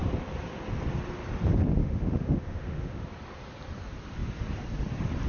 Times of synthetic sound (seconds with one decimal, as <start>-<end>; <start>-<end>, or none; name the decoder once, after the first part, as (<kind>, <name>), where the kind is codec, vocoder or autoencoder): 1.8-3.1 (autoencoder, DAC-VAE)